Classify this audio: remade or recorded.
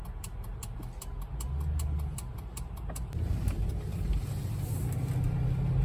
recorded